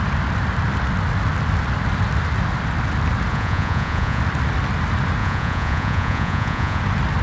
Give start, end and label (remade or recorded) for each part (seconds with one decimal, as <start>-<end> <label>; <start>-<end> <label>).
0.0-3.3 recorded; 3.3-4.2 remade; 4.2-5.2 recorded; 5.2-6.8 remade; 6.8-7.2 recorded